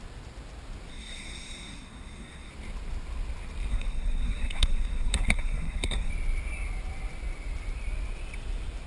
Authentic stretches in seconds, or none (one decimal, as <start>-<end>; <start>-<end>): 0.0-0.9; 2.5-3.7; 6.1-8.9